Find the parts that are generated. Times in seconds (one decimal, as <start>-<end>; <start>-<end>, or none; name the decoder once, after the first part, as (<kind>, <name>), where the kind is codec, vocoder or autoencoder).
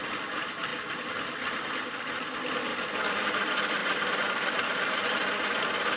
0.7-1.7 (vocoder, BigVGAN v2); 2.7-3.3; 3.8-5.6